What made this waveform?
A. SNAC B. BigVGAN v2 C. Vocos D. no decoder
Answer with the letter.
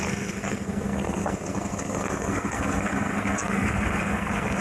A